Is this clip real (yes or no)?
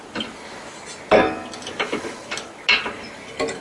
yes